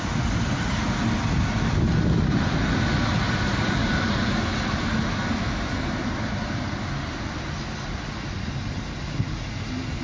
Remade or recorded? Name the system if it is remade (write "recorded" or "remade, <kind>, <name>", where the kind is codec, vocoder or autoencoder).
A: recorded